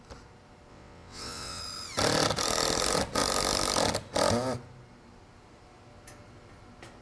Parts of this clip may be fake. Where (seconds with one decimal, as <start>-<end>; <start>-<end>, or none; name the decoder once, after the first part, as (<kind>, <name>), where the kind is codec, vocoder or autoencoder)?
0.7-1.6 (vocoder, WaveNeXt)